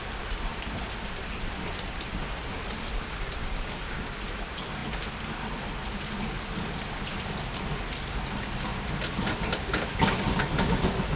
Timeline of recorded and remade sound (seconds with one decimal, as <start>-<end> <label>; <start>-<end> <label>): 0.0-3.4 recorded; 3.4-4.2 remade; 4.2-11.2 recorded

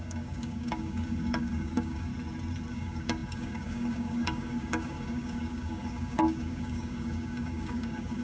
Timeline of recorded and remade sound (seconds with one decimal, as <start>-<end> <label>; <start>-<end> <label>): 0.0-2.1 remade; 2.1-2.7 recorded; 2.7-8.2 remade

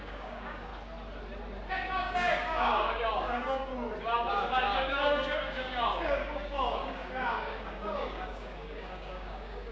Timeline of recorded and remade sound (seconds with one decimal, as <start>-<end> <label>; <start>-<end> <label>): 0.0-0.7 remade; 0.7-1.7 recorded; 1.7-3.7 remade; 3.7-4.3 recorded; 4.3-9.7 remade

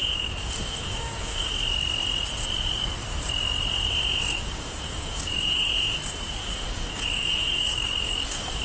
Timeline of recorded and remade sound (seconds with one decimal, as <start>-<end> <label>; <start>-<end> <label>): 0.0-1.5 remade; 1.5-4.3 recorded; 4.3-5.7 remade; 5.7-6.4 recorded; 6.4-8.6 remade

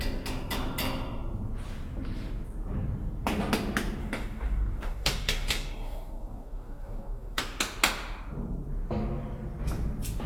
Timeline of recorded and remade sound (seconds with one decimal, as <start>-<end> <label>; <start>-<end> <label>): 0.0-4.0 recorded; 4.0-7.4 remade; 7.4-10.3 recorded

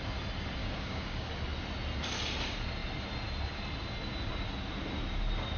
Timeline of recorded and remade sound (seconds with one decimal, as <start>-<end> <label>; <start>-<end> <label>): 0.0-0.6 recorded; 0.6-1.3 remade; 1.3-5.6 recorded

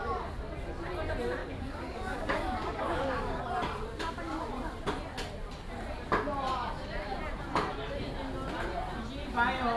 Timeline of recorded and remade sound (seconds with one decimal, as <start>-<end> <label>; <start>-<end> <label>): 0.0-1.4 recorded; 1.4-3.4 remade; 3.4-9.8 recorded